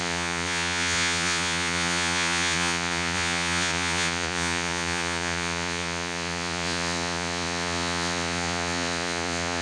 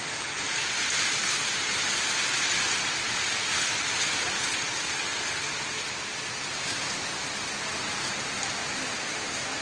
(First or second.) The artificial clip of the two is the first